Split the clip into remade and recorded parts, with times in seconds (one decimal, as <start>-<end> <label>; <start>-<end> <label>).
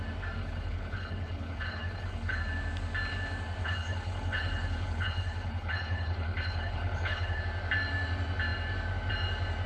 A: 0.0-0.4 recorded; 0.4-2.4 remade; 2.4-3.6 recorded; 3.6-7.4 remade; 7.4-9.7 recorded